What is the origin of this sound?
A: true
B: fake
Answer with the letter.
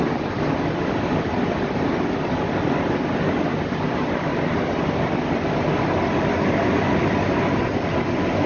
A